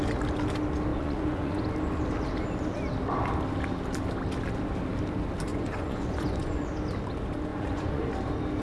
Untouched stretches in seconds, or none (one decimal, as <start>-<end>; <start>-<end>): 0.0-0.9; 1.6-5.5; 6.7-7.5; 8.1-8.6

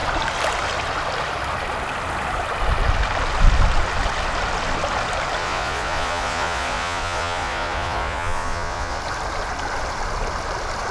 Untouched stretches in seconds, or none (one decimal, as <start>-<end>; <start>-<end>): 0.0-5.4; 9.0-10.9

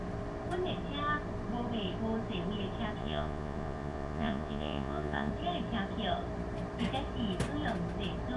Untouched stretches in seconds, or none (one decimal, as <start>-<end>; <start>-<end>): 0.0-3.0; 5.3-8.4

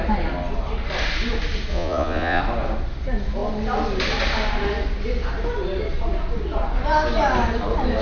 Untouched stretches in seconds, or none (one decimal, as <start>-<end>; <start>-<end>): 0.0-1.7; 2.4-8.0

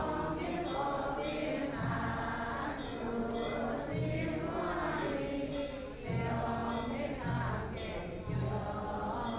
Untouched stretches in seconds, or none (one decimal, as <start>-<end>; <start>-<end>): 0.0-9.4

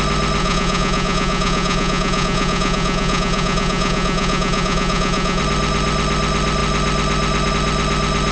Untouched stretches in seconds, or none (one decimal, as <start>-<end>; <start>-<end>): 0.0-0.4; 5.4-8.3

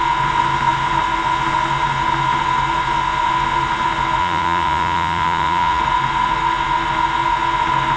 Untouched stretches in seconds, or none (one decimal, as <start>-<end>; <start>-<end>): 0.0-4.2; 5.8-8.0